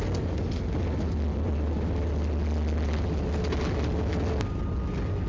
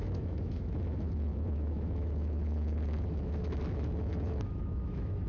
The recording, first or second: first